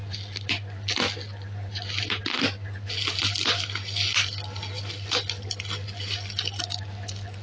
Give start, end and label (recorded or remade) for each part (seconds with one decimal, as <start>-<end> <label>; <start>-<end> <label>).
0.0-7.4 recorded